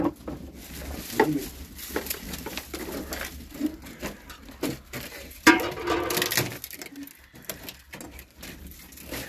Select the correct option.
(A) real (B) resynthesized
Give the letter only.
A